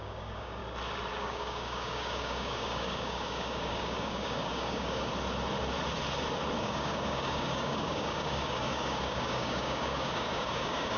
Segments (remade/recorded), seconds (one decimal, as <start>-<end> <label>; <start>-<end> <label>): 0.0-0.6 remade; 0.6-1.1 recorded; 1.1-5.1 remade; 5.1-6.6 recorded; 6.6-11.0 remade